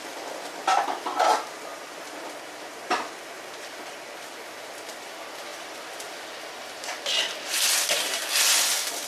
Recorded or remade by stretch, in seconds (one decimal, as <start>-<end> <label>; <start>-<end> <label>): 0.0-1.7 recorded; 1.7-4.1 remade; 4.1-5.5 recorded; 5.5-6.1 remade; 6.1-9.1 recorded